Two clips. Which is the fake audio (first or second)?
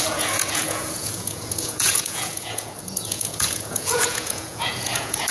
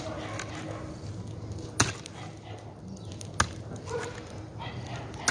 first